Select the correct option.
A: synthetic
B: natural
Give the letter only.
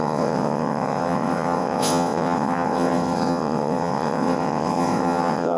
A